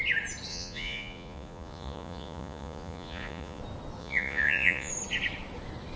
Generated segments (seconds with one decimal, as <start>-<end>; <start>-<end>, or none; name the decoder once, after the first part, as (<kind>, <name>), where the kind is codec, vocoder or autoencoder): 0.5-3.6 (vocoder, Vocos); 4.0-4.9